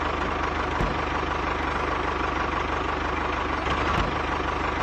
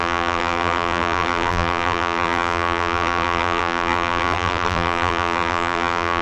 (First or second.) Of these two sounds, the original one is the first